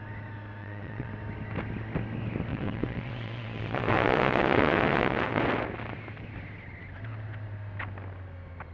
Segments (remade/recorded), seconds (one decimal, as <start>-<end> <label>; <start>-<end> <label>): 0.0-0.6 recorded; 0.6-1.1 remade; 1.1-2.5 recorded; 2.5-5.4 remade; 5.4-8.7 recorded